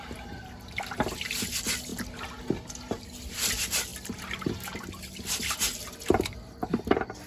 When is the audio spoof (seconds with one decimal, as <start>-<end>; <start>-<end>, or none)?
none